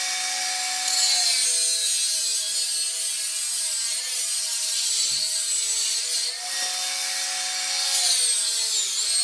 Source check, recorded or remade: recorded